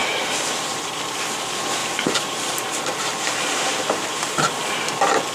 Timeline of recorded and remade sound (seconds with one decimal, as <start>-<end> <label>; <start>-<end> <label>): 0.0-1.0 remade; 1.0-1.8 recorded; 1.8-4.8 remade; 4.8-5.3 recorded